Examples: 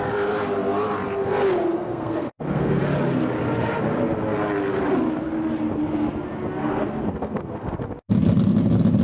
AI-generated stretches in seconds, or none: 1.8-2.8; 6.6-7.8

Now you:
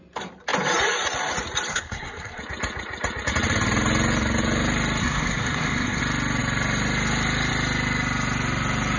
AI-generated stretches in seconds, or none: 1.7-2.4; 5.0-6.0

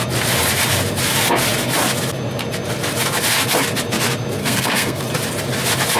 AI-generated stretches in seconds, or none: 4.4-5.0

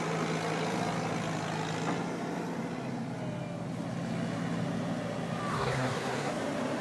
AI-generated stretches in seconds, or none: 5.5-6.3

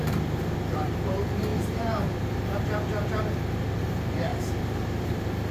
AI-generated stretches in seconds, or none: none

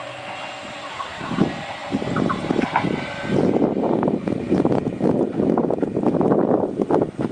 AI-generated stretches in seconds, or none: 0.9-1.4

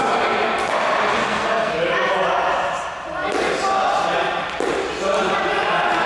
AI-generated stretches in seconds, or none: 1.2-1.7

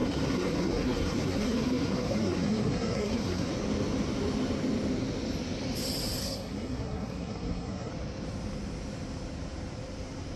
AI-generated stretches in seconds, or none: 0.0-3.5; 6.2-7.9